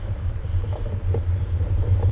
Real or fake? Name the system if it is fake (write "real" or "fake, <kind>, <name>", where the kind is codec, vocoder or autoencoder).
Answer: fake, vocoder, BigVGAN v2